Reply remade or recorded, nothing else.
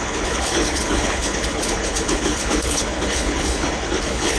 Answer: remade